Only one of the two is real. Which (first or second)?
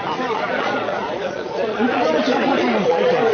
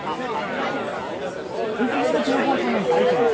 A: second